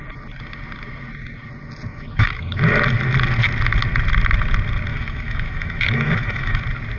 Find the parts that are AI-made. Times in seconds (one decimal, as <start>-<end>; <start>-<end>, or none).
1.9-2.6; 4.9-6.6